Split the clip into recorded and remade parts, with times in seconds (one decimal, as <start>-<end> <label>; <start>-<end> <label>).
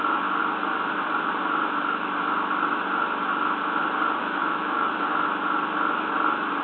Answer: 0.0-4.2 recorded; 4.2-4.9 remade; 4.9-6.6 recorded